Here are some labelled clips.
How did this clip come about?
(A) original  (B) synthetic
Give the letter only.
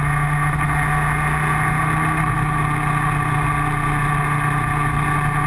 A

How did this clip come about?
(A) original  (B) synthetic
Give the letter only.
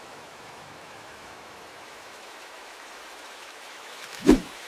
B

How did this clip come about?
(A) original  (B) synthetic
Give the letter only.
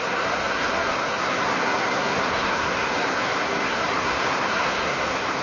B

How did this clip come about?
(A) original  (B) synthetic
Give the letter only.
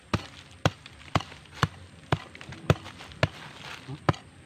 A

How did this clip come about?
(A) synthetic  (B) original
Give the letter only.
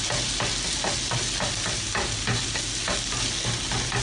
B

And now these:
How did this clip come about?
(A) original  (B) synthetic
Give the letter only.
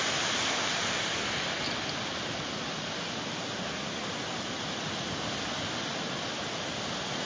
A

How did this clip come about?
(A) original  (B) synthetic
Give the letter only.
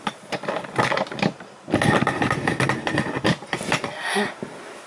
A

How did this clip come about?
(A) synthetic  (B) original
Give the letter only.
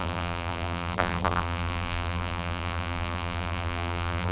A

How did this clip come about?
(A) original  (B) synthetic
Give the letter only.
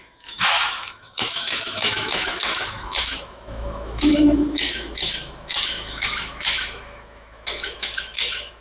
B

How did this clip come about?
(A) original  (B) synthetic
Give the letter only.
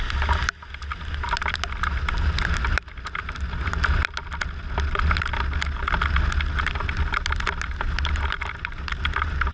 A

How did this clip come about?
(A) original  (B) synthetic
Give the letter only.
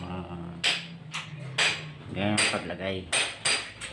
A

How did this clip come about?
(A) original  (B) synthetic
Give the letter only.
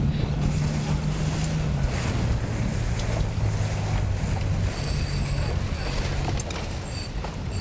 A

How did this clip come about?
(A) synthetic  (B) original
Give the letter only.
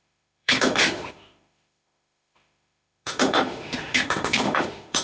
A